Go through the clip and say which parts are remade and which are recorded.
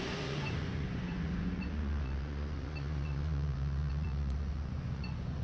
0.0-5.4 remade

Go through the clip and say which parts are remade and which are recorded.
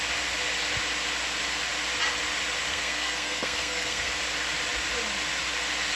0.0-2.7 recorded; 2.7-4.1 remade; 4.1-6.0 recorded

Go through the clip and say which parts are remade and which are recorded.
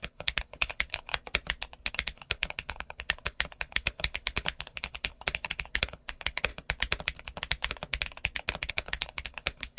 0.0-1.1 remade; 1.1-1.9 recorded; 1.9-6.5 remade; 6.5-8.7 recorded; 8.7-9.8 remade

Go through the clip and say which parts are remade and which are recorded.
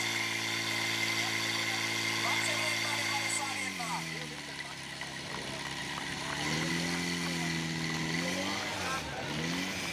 0.0-3.0 recorded; 3.0-5.3 remade; 5.3-5.8 recorded; 5.8-6.7 remade; 6.7-9.9 recorded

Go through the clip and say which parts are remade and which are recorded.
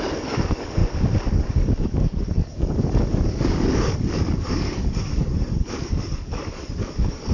0.0-0.8 remade; 0.8-1.5 recorded; 1.5-7.3 remade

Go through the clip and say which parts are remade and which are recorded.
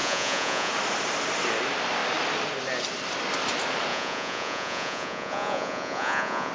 0.0-0.7 remade; 0.7-3.9 recorded; 3.9-6.5 remade